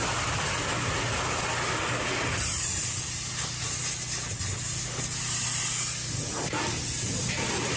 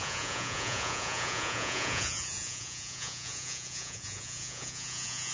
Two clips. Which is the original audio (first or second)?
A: first